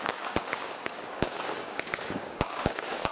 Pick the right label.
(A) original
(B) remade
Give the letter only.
B